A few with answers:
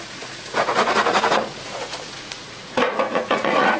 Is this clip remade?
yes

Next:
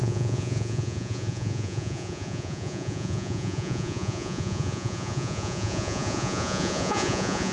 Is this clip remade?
yes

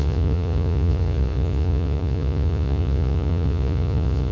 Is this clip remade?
yes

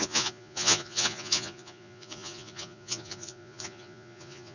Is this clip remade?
yes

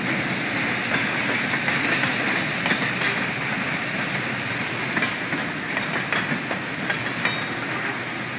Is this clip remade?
no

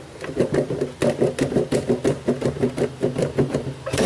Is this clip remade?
no